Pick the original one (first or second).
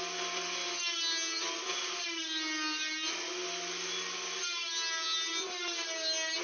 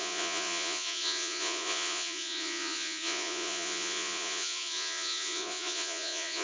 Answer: first